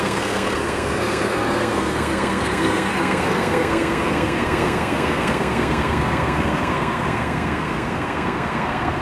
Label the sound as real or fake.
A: fake